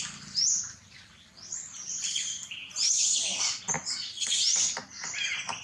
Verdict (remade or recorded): recorded